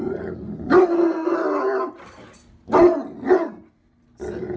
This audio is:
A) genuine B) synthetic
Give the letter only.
A